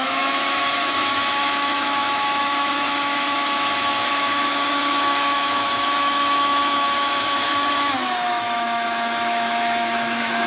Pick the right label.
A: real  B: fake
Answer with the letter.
B